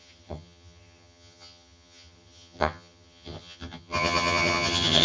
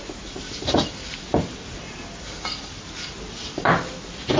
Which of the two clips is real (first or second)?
second